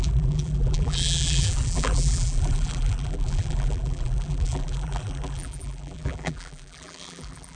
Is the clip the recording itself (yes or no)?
no